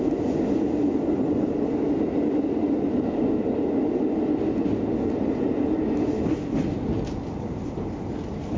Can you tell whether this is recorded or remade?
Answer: recorded